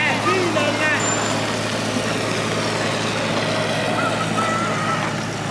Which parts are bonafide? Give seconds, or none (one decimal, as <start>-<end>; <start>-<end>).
0.0-5.5